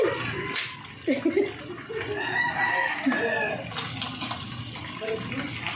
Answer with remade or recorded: recorded